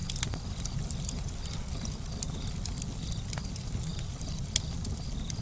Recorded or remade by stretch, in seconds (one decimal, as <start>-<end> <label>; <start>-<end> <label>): 0.0-5.4 recorded

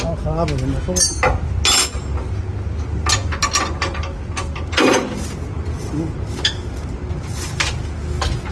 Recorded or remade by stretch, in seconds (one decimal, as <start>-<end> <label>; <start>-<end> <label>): 0.0-8.5 recorded

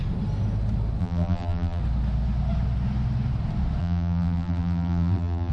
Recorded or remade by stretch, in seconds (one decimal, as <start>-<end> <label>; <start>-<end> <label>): 0.0-1.0 recorded; 1.0-1.8 remade; 1.8-3.8 recorded; 3.8-5.5 remade

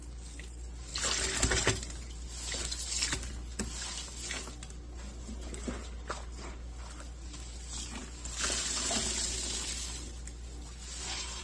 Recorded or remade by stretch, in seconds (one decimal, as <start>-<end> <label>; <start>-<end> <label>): 0.0-11.4 recorded

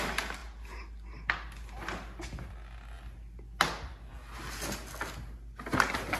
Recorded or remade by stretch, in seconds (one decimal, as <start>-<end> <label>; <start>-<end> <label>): 0.0-6.2 recorded